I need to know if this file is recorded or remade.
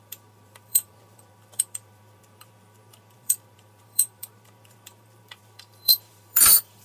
remade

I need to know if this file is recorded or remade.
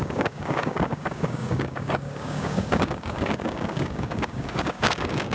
remade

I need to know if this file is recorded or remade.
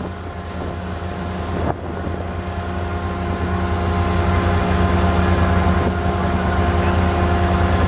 recorded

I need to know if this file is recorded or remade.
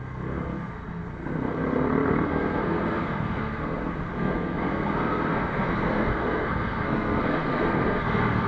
remade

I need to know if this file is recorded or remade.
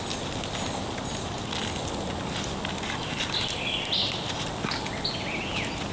recorded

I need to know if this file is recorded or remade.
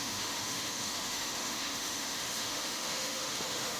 remade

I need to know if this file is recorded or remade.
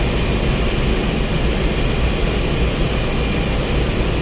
recorded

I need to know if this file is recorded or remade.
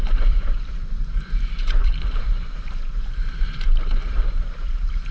remade